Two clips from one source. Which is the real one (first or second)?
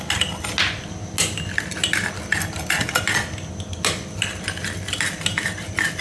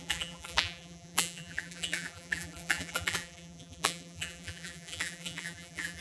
first